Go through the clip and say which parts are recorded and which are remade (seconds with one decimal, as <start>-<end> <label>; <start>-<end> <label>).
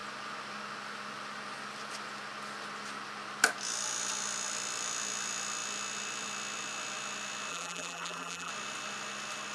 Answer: 0.0-7.5 recorded; 7.5-8.5 remade; 8.5-9.5 recorded